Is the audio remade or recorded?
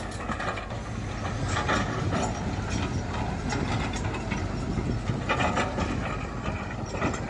recorded